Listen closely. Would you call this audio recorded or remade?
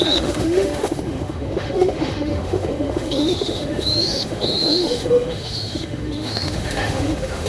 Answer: remade